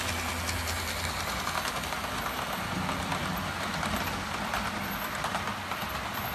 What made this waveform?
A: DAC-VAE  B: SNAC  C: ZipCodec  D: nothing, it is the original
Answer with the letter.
D